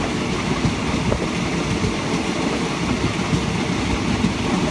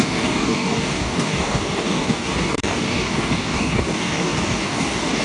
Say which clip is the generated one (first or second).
second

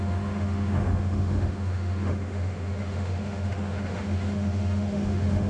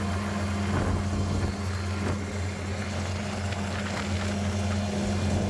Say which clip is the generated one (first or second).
first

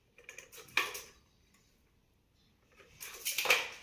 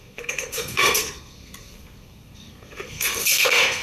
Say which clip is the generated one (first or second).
second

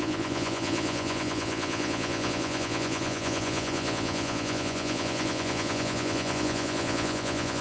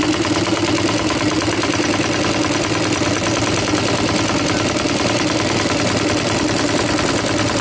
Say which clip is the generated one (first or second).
first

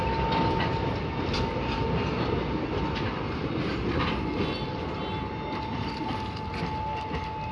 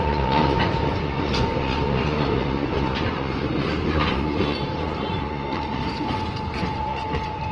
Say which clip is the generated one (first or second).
second